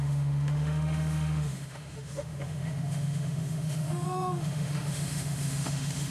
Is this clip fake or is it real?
fake